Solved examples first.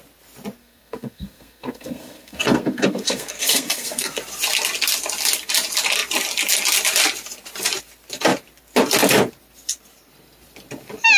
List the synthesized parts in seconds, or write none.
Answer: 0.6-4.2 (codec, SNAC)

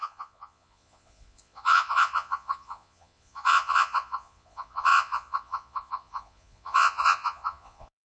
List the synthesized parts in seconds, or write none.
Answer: 0.0-8.0 (vocoder, Vocos)